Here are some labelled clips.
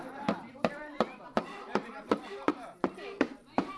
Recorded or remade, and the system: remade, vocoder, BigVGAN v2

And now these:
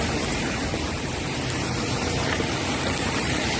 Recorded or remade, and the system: remade, vocoder, BigVGAN v2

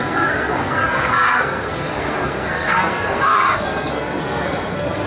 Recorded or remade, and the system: remade, codec, SNAC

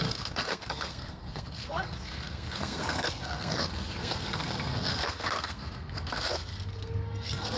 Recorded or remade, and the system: remade, codec, SNAC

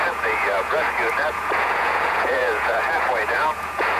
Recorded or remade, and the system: remade, vocoder, Vocos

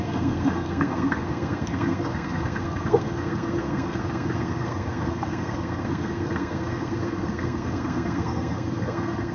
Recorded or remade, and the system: remade, codec, SNAC